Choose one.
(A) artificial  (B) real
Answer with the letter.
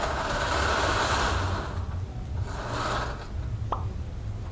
B